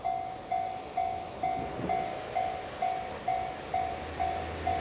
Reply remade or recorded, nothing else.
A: recorded